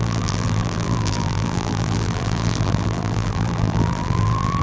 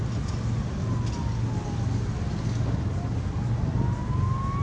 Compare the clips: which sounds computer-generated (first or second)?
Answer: first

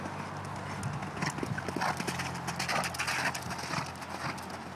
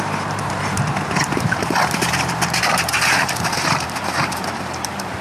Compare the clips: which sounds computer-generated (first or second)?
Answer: second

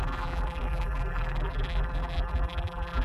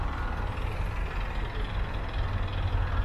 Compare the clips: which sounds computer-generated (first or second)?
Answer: first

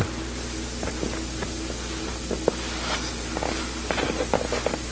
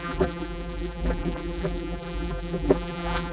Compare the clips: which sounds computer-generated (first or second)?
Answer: second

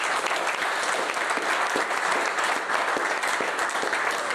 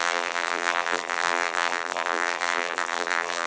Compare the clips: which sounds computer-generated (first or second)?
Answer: second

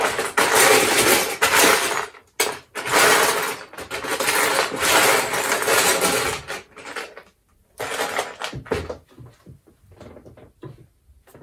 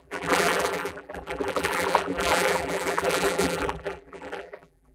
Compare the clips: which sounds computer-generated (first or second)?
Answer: second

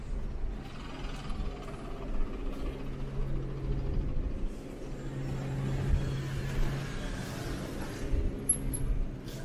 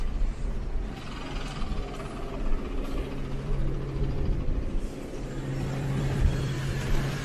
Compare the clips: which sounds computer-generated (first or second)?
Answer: second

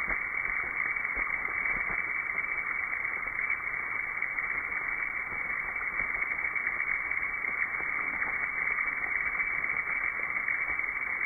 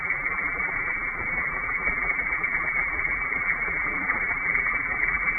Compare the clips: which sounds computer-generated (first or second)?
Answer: second